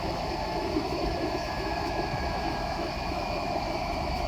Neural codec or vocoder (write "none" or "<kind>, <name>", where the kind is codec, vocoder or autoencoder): autoencoder, DAC-VAE